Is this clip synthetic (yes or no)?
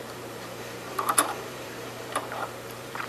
yes